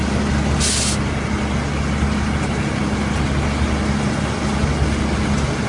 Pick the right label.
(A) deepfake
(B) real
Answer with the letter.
B